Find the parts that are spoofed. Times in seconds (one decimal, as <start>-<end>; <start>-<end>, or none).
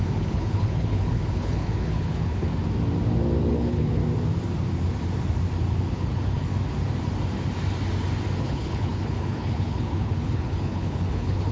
0.0-2.5; 3.5-4.0; 5.9-6.5; 8.4-11.5